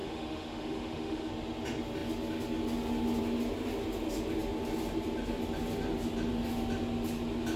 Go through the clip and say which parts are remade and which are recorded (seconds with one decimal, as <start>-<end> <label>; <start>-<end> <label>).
0.0-1.3 remade; 1.3-7.6 recorded